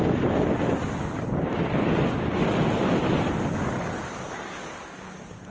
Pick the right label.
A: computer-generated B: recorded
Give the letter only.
B